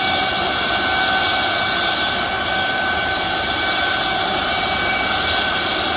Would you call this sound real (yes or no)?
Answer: yes